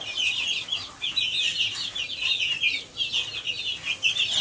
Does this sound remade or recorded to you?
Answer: recorded